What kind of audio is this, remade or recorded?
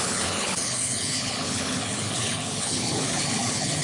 remade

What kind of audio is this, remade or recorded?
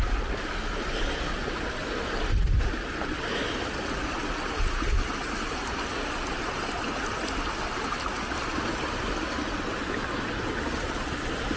recorded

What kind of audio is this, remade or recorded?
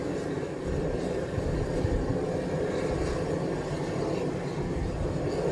recorded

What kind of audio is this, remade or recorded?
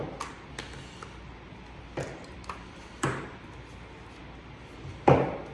recorded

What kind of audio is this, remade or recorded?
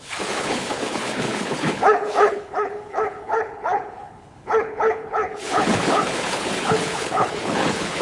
remade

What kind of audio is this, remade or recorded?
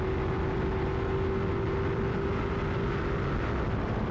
recorded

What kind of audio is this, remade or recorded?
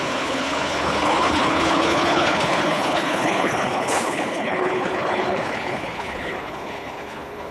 remade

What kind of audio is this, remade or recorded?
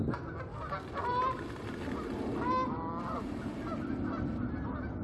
recorded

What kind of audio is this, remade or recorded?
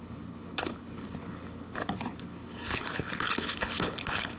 remade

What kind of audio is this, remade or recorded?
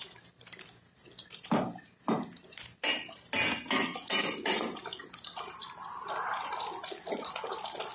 recorded